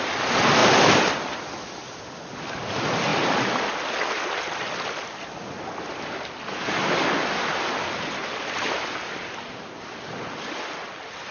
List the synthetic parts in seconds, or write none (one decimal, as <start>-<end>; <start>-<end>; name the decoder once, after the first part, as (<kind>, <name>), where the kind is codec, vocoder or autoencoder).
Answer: none